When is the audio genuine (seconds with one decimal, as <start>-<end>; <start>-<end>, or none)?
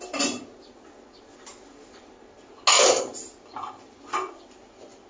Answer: 0.0-5.1